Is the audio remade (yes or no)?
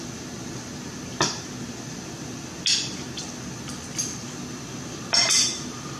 no